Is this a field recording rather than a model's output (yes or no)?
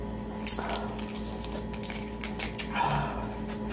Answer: yes